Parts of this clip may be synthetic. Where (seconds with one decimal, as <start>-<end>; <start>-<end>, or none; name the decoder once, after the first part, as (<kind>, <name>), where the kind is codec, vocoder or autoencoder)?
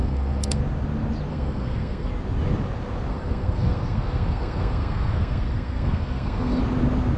0.0-0.6 (codec, SNAC); 1.3-2.1; 3.1-6.6